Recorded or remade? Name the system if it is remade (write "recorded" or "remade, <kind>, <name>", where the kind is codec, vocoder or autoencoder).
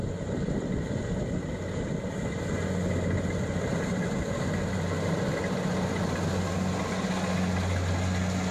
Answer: recorded